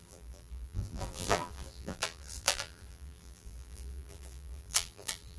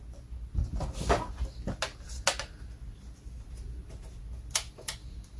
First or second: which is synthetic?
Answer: first